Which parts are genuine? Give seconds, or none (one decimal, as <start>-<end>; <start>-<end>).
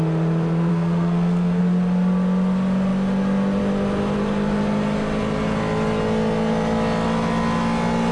0.0-0.7; 1.6-8.1